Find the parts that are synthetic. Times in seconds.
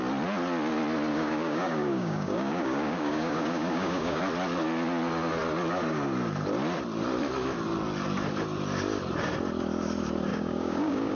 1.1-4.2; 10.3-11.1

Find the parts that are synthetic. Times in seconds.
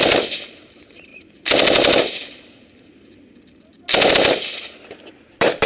none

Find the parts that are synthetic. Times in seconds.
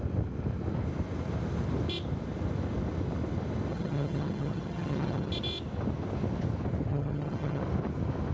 3.7-5.3; 6.9-7.6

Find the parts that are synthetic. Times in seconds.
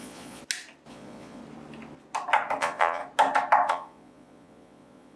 0.0-0.4; 0.9-1.4; 2.6-3.0; 3.7-5.2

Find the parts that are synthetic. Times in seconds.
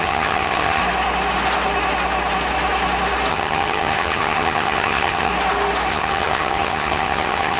0.0-0.8; 3.3-5.3; 5.9-7.6